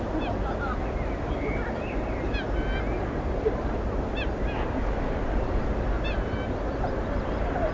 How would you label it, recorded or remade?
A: recorded